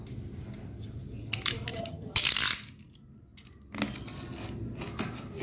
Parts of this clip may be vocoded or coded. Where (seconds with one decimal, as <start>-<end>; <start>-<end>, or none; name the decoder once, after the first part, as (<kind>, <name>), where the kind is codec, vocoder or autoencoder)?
1.7-2.2 (vocoder, HiFi-GAN)